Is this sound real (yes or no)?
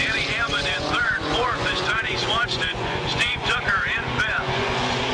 no